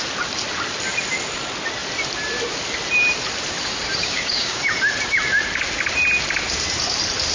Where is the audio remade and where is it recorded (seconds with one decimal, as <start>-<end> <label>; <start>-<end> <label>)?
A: 0.0-4.0 recorded; 4.0-4.6 remade; 4.6-7.3 recorded